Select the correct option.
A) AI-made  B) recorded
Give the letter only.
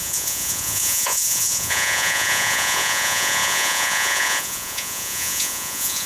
A